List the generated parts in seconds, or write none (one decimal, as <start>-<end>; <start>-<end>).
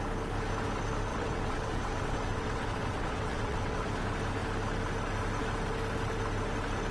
1.1-3.9